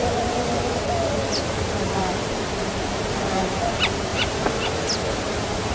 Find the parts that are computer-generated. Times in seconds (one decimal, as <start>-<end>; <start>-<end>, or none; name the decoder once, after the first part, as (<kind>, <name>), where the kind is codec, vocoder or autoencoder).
0.0-4.1 (vocoder, BigVGAN v2)